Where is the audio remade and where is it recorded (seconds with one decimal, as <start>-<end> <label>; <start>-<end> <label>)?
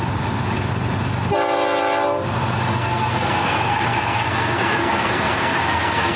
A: 0.0-2.7 recorded; 2.7-6.2 remade